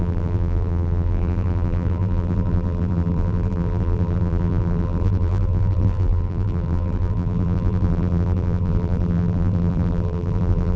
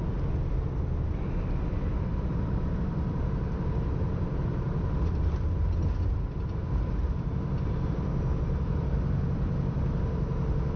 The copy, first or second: first